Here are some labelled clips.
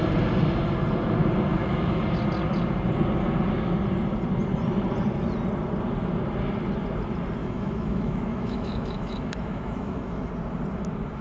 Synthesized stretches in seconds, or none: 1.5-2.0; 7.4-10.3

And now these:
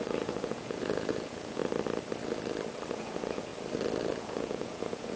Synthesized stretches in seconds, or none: 0.0-1.6; 2.9-3.5; 4.0-5.2

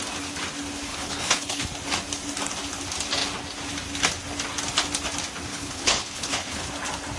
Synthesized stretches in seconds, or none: 0.9-1.6; 5.5-6.7

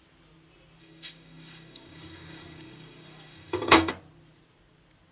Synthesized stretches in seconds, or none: 0.8-3.9

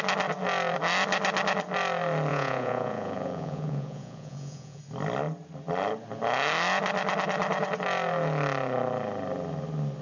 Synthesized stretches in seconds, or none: 2.3-4.8